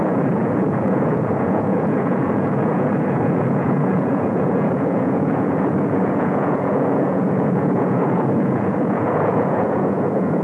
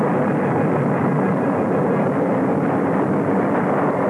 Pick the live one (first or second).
second